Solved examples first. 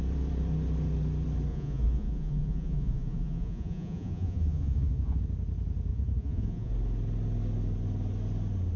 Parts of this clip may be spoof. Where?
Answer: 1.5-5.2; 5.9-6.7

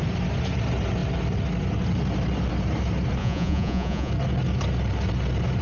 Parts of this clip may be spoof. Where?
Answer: 3.2-4.1

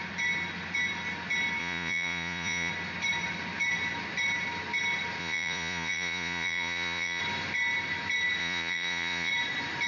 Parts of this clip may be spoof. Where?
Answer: 1.6-2.7; 5.2-7.2; 8.4-9.3

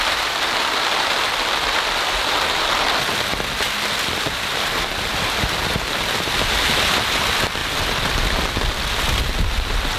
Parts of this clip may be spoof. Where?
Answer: none